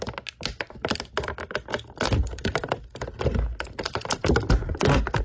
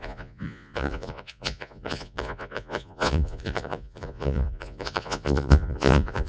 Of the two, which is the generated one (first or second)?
second